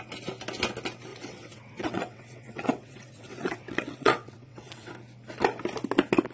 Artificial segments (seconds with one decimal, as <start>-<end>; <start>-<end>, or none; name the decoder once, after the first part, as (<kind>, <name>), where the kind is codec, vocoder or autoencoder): 1.1-4.9 (vocoder, WaveNeXt)